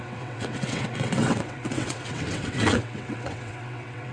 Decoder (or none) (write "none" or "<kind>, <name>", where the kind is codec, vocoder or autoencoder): vocoder, WaveNeXt